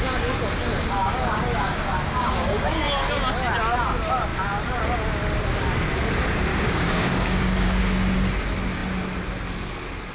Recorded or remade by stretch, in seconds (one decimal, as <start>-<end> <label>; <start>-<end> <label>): 0.0-1.0 recorded; 1.0-2.8 remade; 2.8-6.5 recorded; 6.5-7.8 remade; 7.8-10.1 recorded